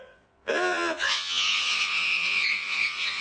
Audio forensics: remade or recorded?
remade